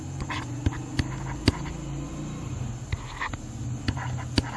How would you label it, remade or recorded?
recorded